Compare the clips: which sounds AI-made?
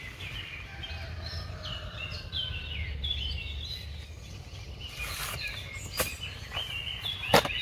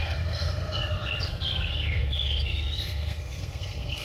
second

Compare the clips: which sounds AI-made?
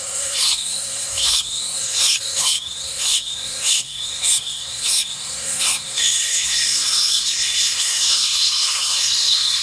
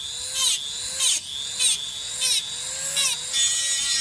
first